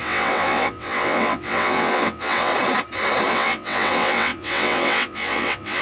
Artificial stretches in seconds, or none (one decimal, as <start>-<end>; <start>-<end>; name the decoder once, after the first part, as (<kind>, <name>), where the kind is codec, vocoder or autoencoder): 0.0-2.5 (vocoder, WaveNeXt); 3.3-5.8